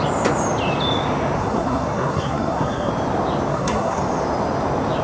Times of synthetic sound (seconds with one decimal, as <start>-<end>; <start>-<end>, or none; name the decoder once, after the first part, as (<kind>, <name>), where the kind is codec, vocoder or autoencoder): 1.4-2.9 (codec, SNAC); 3.5-4.0